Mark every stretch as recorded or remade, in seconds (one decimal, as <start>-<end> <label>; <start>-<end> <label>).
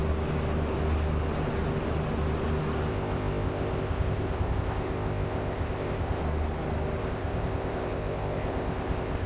0.0-2.9 recorded; 2.9-6.2 remade; 6.2-7.0 recorded; 7.0-9.3 remade